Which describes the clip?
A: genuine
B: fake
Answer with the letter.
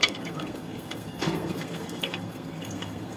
B